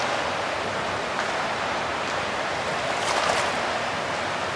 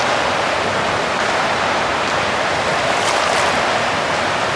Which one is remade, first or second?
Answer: second